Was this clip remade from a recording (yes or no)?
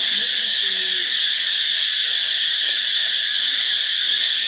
yes